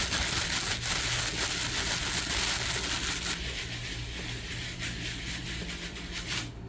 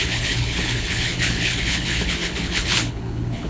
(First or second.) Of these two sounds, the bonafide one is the first